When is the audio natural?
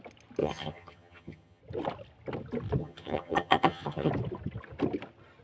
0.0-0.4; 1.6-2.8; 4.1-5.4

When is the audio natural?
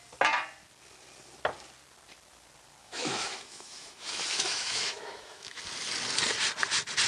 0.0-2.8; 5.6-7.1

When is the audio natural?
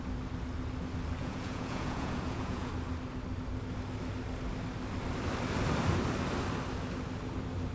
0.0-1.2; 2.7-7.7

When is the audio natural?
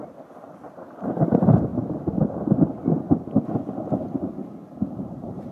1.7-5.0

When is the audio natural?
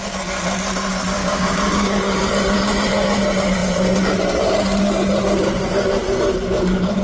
0.0-1.2; 2.2-7.0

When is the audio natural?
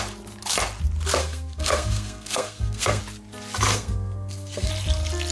0.0-1.2; 3.0-3.7; 4.7-5.3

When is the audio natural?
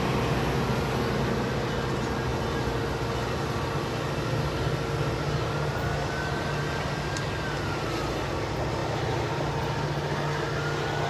0.0-11.1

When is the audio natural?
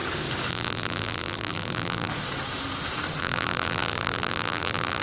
0.0-0.5; 2.1-3.2